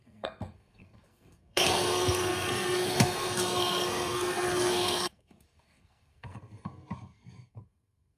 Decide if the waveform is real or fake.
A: fake